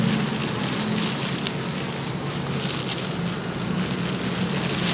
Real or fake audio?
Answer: real